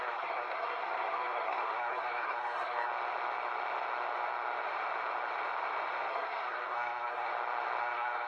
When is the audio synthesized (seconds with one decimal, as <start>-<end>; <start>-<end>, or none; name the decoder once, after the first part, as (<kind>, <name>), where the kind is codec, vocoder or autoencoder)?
0.0-2.9 (codec, SNAC); 6.1-7.3; 7.8-8.3